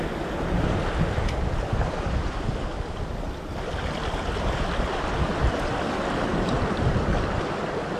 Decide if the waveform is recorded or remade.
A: recorded